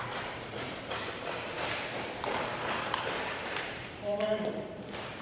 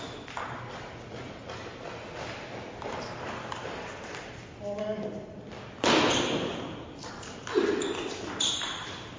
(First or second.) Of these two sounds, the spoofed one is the first